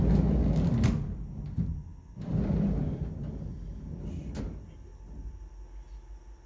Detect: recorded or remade recorded